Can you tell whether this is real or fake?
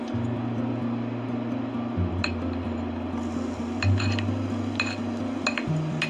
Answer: real